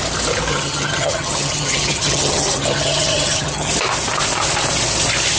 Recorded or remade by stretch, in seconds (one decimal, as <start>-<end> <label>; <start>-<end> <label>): 0.0-0.5 recorded; 0.5-3.7 remade; 3.7-5.4 recorded